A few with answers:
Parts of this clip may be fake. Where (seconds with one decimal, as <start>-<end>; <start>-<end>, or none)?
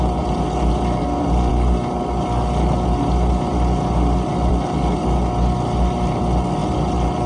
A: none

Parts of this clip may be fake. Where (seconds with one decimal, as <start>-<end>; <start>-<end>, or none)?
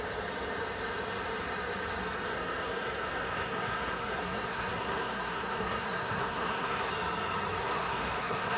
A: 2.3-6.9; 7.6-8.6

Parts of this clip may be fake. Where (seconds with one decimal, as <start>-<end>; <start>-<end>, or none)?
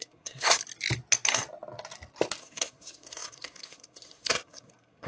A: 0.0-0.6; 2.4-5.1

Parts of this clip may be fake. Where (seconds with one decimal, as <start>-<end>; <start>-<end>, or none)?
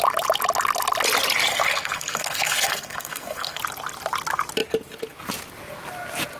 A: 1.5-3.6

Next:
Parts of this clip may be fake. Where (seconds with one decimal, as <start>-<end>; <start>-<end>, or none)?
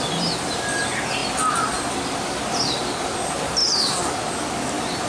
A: none